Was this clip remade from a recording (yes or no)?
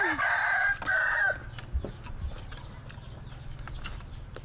no